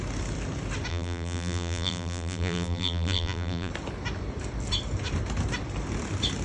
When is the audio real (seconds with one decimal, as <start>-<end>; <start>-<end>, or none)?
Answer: 0.0-0.9; 3.7-6.4